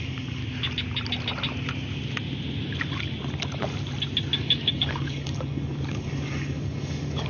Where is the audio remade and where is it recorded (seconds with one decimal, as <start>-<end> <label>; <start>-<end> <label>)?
0.0-0.4 remade; 0.4-4.7 recorded; 4.7-7.3 remade